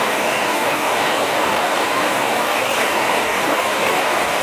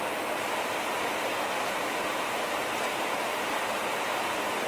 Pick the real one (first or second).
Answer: second